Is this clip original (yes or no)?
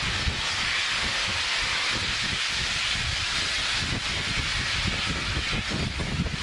yes